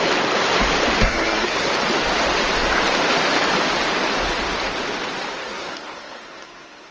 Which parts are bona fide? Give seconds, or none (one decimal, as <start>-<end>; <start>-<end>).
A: 0.0-1.0; 1.7-5.3